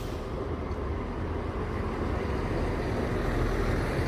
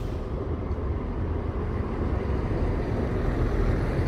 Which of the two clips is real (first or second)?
first